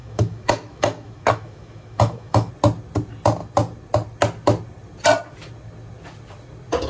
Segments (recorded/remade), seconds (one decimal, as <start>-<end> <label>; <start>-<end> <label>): 0.0-2.5 remade; 2.5-6.9 recorded